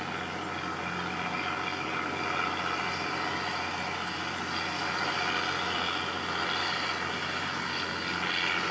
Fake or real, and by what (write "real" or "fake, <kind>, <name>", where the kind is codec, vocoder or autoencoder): real